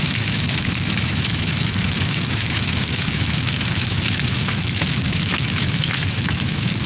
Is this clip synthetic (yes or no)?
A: yes